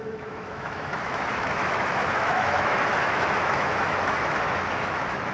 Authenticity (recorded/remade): remade